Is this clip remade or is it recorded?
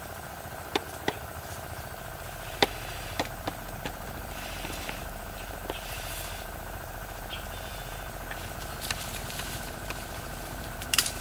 remade